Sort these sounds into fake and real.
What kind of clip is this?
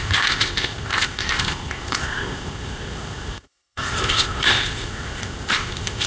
fake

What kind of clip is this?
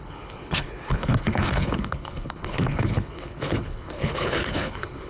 fake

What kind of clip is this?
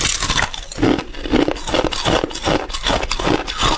real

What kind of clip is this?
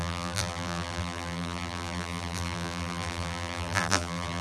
fake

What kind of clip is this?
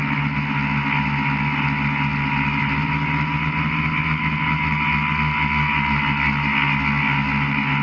real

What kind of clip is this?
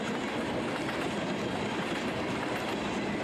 real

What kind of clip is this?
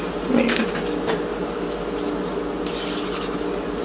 real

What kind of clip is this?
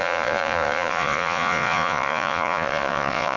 fake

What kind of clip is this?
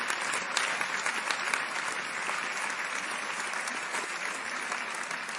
real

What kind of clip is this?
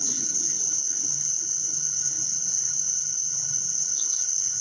fake